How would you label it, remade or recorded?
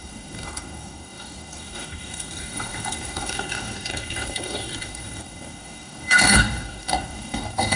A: remade